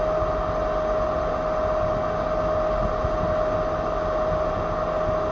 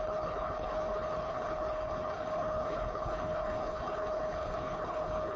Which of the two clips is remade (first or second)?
second